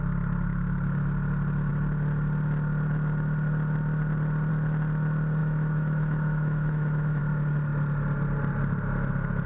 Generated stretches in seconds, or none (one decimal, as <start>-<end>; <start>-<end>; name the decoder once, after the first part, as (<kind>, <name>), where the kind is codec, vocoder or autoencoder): 5.4-7.2 (autoencoder, DAC-VAE)